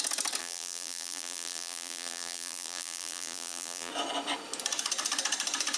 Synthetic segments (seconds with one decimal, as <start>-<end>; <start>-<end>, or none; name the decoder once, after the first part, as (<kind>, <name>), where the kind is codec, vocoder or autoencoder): 0.4-3.9 (vocoder, BigVGAN v2)

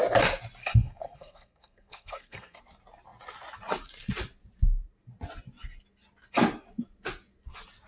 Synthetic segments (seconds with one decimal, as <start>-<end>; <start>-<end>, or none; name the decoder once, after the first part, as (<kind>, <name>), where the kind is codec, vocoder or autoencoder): 0.6-2.6 (codec, SNAC)

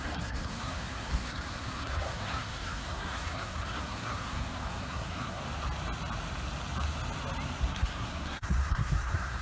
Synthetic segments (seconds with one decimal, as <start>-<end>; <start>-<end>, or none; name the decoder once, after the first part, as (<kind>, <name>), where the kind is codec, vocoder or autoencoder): 0.0-5.4 (codec, SNAC); 7.7-9.4

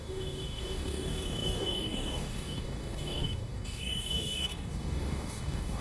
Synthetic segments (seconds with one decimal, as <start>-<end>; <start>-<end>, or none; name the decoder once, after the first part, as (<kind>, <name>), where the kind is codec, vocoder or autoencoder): 0.0-5.8 (codec, DAC)

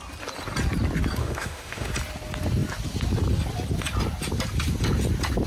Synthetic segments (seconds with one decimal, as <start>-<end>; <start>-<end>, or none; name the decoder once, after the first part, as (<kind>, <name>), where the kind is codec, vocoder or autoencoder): 1.2-1.9 (autoencoder, DAC-VAE)

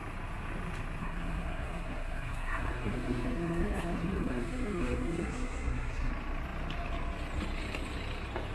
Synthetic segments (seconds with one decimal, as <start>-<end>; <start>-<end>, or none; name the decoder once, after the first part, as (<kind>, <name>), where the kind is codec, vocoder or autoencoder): 1.0-6.1 (codec, SNAC)